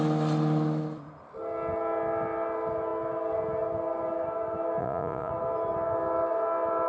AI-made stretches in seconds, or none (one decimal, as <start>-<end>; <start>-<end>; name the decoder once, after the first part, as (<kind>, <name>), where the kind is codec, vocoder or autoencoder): 4.8-5.3 (vocoder, Vocos)